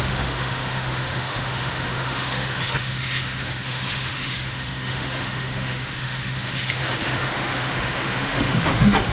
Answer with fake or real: fake